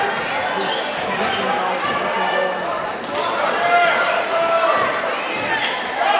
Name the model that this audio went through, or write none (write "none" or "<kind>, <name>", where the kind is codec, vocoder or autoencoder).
none